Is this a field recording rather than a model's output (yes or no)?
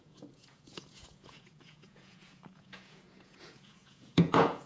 no